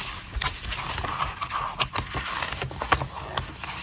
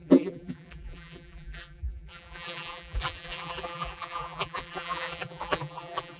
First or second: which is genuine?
first